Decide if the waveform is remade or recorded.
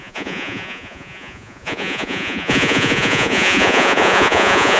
remade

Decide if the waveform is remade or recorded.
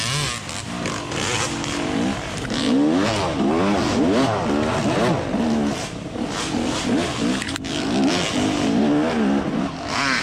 recorded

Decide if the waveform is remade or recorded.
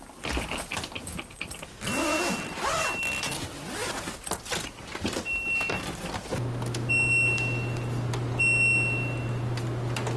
recorded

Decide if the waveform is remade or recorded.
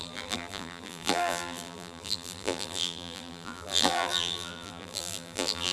remade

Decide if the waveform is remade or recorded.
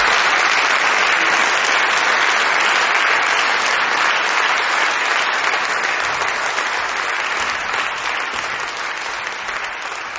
recorded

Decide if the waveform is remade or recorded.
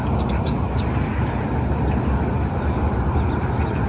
recorded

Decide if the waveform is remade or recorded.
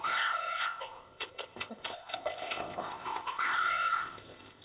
remade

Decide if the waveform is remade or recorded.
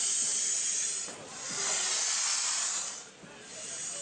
remade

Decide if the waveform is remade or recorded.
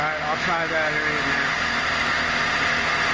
recorded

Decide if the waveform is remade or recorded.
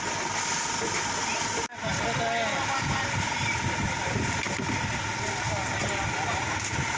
recorded